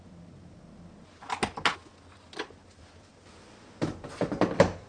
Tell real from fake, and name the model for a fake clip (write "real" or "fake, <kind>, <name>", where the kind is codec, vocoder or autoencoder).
real